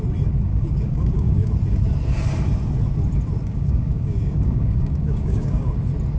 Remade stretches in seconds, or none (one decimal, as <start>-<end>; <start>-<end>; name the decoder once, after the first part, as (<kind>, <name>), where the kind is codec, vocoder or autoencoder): 0.5-1.5 (codec, DAC); 3.5-5.8